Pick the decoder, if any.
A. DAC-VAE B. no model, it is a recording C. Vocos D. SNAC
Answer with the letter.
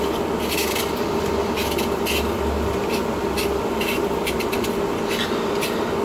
B